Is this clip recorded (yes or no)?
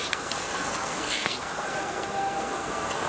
no